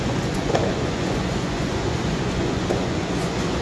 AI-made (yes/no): yes